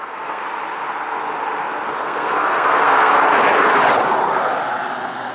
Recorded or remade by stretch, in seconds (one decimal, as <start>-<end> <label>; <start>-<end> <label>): 0.0-0.4 remade; 0.4-2.0 recorded; 2.0-3.1 remade; 3.1-5.3 recorded